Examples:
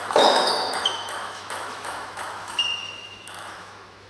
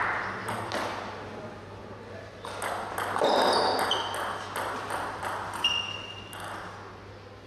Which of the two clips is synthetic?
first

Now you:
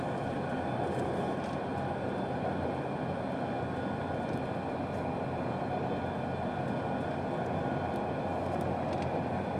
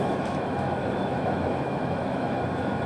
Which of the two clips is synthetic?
second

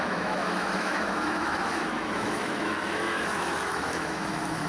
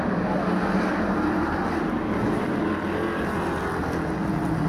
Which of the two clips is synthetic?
first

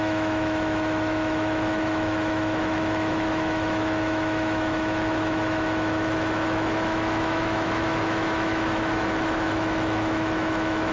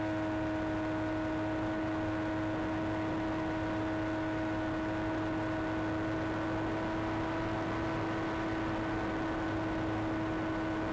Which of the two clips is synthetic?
first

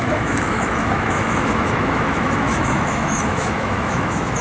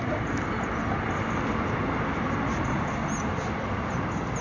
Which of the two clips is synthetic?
first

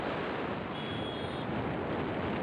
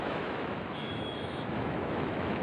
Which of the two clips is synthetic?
second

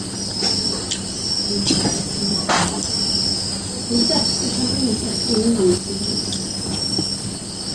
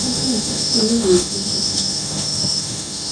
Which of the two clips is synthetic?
second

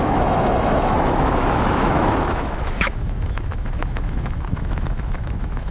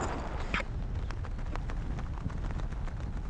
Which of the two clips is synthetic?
first